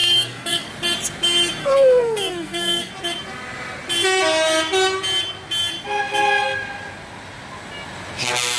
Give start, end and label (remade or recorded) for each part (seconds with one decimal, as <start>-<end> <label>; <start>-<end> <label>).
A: 0.0-0.7 remade; 0.7-1.6 recorded; 1.6-2.9 remade; 2.9-8.6 recorded